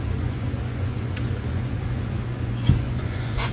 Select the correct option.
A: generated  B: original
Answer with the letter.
A